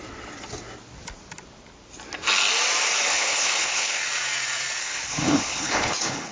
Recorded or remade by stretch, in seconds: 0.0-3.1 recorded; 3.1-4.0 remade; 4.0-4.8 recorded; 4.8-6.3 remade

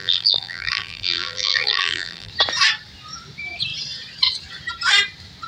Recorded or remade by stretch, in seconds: 0.0-2.3 remade; 2.3-5.5 recorded

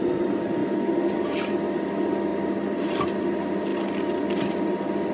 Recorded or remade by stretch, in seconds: 0.0-5.1 recorded

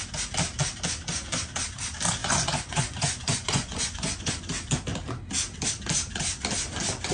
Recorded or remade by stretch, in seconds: 0.0-2.2 recorded; 2.2-4.3 remade; 4.3-7.1 recorded